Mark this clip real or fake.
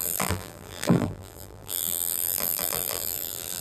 fake